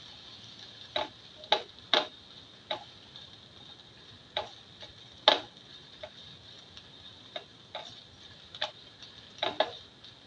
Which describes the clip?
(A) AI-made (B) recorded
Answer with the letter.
B